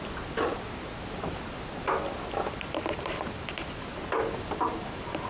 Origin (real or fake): real